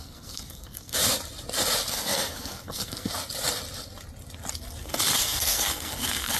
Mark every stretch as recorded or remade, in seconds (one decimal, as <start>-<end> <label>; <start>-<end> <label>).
0.0-1.0 remade; 1.0-1.9 recorded; 1.9-3.1 remade; 3.1-4.8 recorded; 4.8-6.4 remade